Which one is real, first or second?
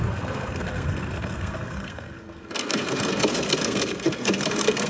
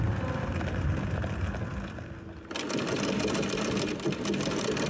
second